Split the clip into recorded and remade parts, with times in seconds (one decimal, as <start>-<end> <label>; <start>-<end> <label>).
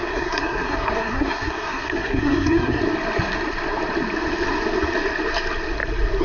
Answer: 0.0-2.8 remade; 2.8-6.2 recorded